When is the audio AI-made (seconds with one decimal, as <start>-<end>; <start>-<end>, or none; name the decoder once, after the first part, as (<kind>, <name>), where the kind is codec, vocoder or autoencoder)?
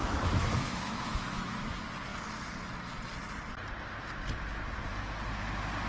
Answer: 0.0-1.7 (autoencoder, DAC-VAE)